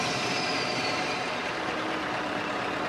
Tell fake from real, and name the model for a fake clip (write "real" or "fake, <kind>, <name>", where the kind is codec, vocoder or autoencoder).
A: fake, vocoder, BigVGAN v2